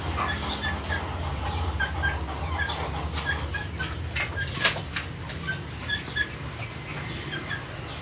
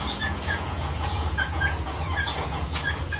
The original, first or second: first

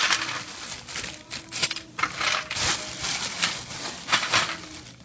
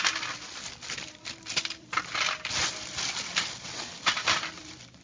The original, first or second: first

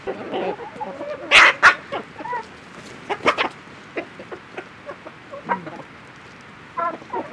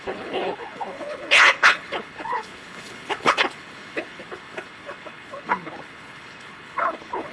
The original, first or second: first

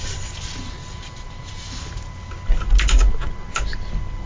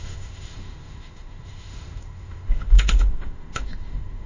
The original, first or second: first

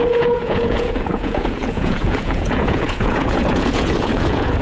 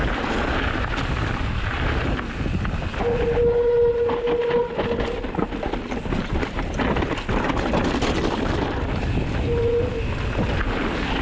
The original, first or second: second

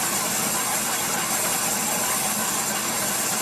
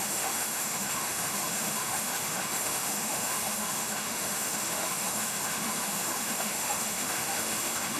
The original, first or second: first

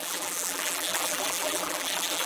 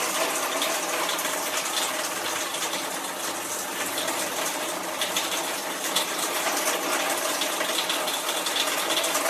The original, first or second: second